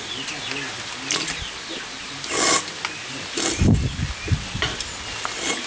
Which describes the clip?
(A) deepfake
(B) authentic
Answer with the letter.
B